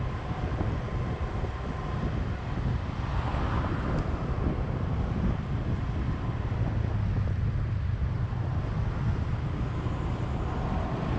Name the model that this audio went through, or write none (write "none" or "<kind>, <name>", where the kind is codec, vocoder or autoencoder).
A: none